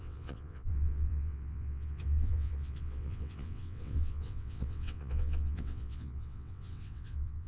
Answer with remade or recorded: remade